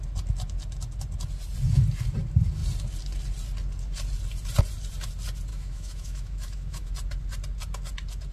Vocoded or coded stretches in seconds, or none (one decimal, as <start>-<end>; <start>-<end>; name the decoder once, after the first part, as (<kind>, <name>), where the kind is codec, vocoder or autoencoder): 5.5-6.9 (autoencoder, DAC-VAE)